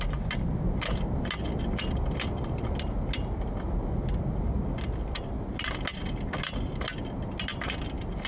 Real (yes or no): yes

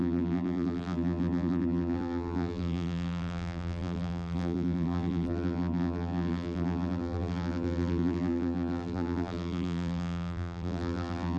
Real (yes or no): no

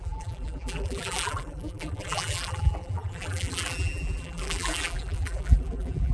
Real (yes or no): no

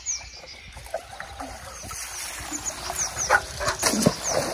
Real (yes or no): yes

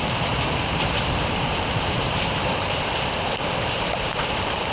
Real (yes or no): no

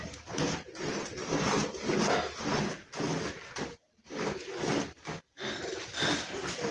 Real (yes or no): yes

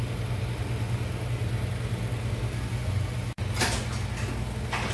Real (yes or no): yes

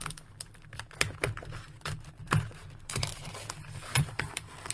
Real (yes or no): no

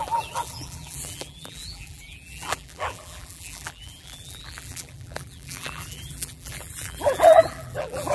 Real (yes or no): no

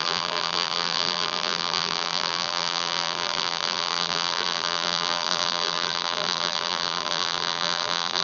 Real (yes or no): no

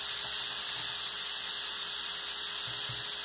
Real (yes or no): yes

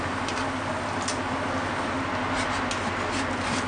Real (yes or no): yes